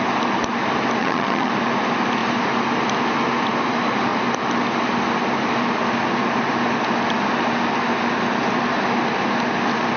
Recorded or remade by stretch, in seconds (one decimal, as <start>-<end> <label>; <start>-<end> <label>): 0.0-1.0 recorded; 1.0-1.5 remade; 1.5-10.0 recorded